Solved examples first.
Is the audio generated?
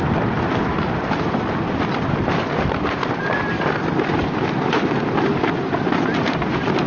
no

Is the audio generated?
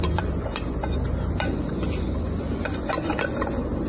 yes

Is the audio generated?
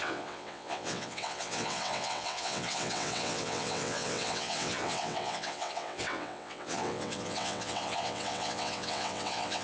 yes